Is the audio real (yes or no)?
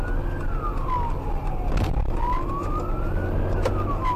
yes